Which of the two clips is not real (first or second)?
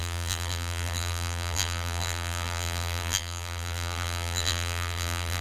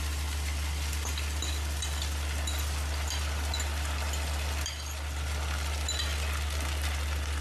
first